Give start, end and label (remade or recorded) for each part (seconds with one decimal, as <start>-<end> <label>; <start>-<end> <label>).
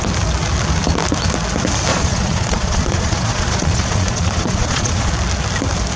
0.0-1.9 recorded; 1.9-5.1 remade; 5.1-6.0 recorded